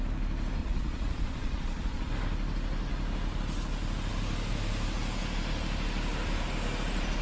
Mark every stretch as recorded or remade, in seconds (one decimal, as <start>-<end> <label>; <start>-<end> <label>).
0.0-0.6 recorded; 0.6-2.1 remade; 2.1-7.2 recorded